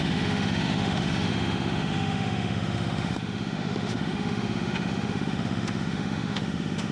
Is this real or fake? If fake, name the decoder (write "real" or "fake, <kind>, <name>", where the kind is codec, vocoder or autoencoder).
fake, autoencoder, DAC-VAE